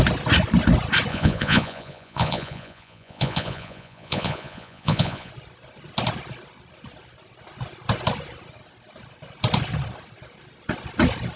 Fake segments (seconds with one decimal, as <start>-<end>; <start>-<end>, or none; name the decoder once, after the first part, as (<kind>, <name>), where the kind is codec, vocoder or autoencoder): 1.1-5.3 (vocoder, Vocos)

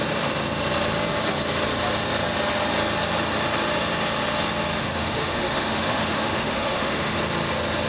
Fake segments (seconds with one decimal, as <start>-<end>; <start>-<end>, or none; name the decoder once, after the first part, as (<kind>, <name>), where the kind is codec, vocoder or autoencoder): 4.8-7.2 (autoencoder, DAC-VAE)

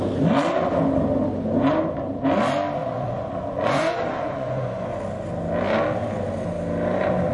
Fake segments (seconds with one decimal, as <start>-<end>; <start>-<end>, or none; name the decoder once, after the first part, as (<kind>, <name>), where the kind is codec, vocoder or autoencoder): 2.8-5.0 (vocoder, Vocos)

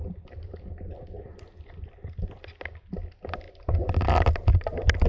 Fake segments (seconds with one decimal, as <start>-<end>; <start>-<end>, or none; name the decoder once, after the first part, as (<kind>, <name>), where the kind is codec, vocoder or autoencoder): none